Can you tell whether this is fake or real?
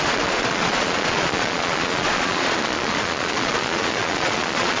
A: fake